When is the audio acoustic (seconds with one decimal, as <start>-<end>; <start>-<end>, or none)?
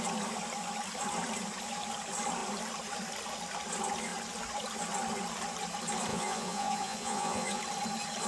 0.0-6.1; 7.6-8.3